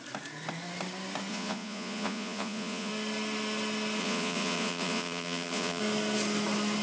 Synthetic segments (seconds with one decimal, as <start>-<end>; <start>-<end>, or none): 1.3-2.9; 4.0-5.8